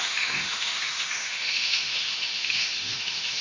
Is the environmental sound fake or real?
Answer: fake